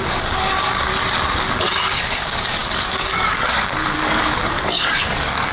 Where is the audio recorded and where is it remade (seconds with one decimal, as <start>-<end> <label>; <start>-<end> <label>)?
0.0-0.9 remade; 0.9-1.4 recorded; 1.4-5.5 remade